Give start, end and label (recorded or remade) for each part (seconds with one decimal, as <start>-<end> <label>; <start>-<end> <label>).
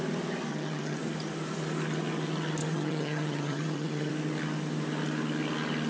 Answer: 0.0-0.5 recorded; 0.5-1.0 remade; 1.0-2.6 recorded; 2.6-4.1 remade; 4.1-5.9 recorded